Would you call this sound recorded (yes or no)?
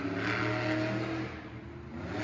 yes